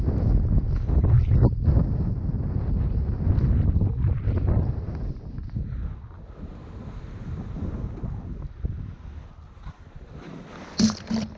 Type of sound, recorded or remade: recorded